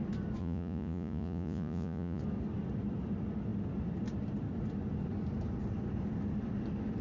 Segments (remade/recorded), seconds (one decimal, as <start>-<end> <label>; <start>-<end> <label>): 0.0-0.4 recorded; 0.4-2.2 remade; 2.2-7.0 recorded

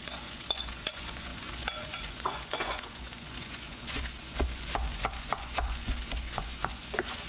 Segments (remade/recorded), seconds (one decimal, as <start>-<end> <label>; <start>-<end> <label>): 0.0-7.3 remade

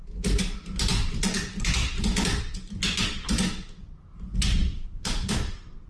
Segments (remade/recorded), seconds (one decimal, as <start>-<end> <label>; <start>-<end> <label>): 0.0-5.9 recorded

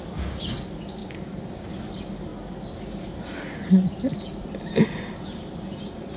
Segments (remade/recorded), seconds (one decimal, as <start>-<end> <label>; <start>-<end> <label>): 0.0-1.0 recorded; 1.0-1.7 remade; 1.7-6.2 recorded

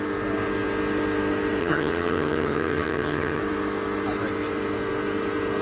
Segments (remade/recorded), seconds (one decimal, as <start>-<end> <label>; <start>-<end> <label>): 0.0-1.6 recorded; 1.6-3.4 remade; 3.4-5.6 recorded